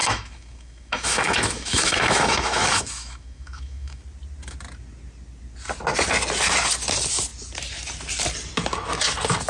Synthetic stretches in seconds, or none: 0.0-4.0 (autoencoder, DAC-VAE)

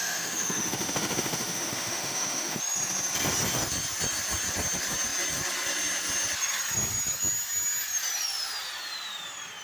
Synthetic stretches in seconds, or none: 0.0-2.6 (autoencoder, DAC-VAE)

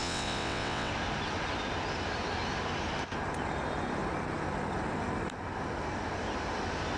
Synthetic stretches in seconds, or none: 0.0-0.9 (vocoder, WaveNeXt)

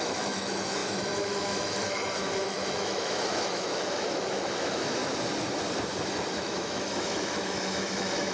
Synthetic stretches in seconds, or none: 0.0-5.0 (autoencoder, DAC-VAE); 6.3-8.3

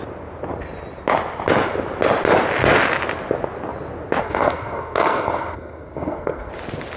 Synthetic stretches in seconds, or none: 4.2-6.5 (codec, SNAC)

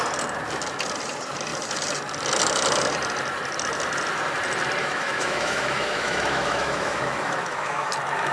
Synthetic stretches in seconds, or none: 4.8-7.9 (autoencoder, DAC-VAE)